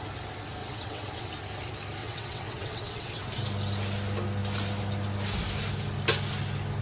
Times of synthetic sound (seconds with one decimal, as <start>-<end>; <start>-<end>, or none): 0.6-1.3; 2.0-3.2